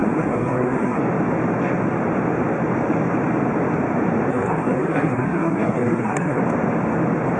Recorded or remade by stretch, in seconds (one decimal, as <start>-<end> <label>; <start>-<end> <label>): 0.0-1.0 remade; 1.0-4.3 recorded; 4.3-6.4 remade; 6.4-7.4 recorded